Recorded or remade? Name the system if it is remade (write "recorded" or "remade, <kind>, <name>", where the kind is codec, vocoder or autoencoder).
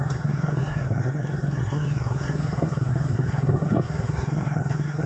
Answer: remade, codec, SNAC